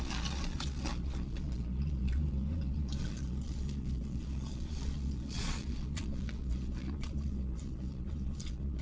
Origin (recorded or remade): remade